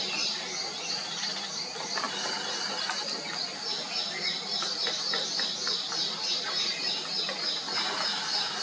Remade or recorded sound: recorded